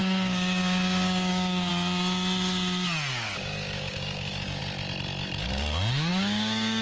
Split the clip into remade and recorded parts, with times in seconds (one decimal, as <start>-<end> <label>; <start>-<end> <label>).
0.0-1.7 remade; 1.7-3.1 recorded; 3.1-4.6 remade; 4.6-6.1 recorded; 6.1-6.8 remade

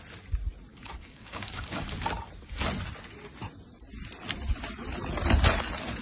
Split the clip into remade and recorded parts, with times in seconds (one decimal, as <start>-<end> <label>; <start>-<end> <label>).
0.0-0.7 recorded; 0.7-1.9 remade; 1.9-6.0 recorded

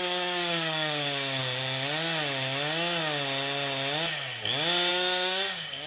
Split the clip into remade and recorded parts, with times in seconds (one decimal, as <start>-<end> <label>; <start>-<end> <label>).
0.0-1.4 remade; 1.4-4.9 recorded; 4.9-5.9 remade

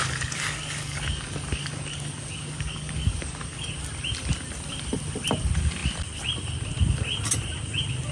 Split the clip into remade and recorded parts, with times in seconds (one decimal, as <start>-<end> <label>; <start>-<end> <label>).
0.0-3.7 remade; 3.7-8.1 recorded

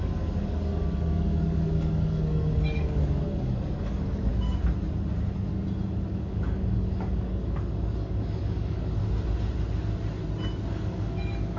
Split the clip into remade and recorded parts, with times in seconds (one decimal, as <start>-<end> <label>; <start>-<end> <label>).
0.0-4.3 remade; 4.3-6.1 recorded; 6.1-9.0 remade; 9.0-10.7 recorded; 10.7-11.6 remade

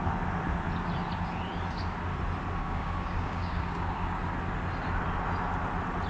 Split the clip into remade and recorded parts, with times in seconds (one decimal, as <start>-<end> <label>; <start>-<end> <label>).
0.0-2.6 recorded; 2.6-4.2 remade; 4.2-6.1 recorded